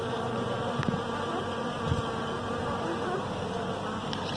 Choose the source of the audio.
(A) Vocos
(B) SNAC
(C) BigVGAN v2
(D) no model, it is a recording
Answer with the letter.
D